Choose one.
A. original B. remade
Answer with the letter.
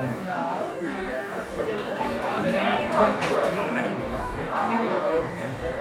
B